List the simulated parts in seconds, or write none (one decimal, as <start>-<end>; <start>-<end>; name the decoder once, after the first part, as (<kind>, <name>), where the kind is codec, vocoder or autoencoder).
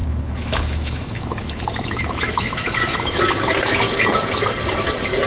0.0-3.2 (autoencoder, DAC-VAE)